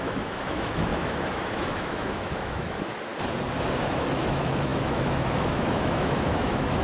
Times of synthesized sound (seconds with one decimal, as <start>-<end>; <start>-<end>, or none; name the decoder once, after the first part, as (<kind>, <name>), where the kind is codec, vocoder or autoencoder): 0.0-3.1 (autoencoder, DAC-VAE); 3.8-6.8

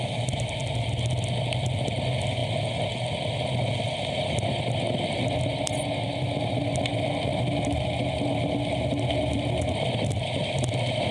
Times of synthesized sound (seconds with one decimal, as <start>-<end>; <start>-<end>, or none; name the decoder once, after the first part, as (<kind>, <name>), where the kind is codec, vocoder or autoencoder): none

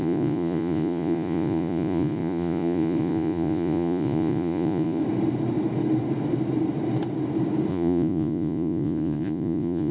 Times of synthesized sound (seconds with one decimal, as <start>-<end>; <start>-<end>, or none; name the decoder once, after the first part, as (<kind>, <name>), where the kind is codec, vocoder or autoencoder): 0.0-5.0 (vocoder, Vocos); 7.7-9.9

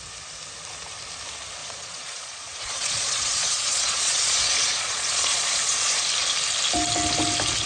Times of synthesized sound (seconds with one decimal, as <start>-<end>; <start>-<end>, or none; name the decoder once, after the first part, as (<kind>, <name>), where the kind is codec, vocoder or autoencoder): 1.6-6.0 (vocoder, Vocos)

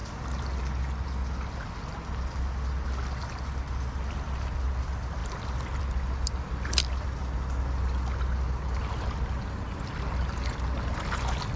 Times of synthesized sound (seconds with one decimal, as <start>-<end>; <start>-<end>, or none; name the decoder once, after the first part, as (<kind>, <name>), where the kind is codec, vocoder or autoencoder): none

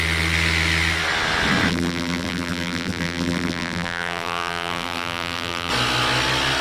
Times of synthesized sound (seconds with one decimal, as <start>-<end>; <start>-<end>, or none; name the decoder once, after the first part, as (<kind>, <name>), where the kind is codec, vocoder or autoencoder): 1.7-5.7 (vocoder, BigVGAN v2)

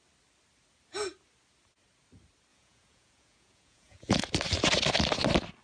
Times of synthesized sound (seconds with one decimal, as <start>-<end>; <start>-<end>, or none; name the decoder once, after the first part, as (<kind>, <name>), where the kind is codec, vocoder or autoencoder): 2.5-4.3 (vocoder, Vocos)

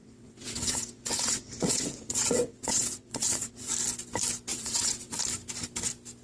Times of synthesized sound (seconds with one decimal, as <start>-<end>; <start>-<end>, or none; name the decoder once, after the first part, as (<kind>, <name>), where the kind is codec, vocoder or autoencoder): 0.0-3.7 (vocoder, WaveNeXt); 4.5-5.2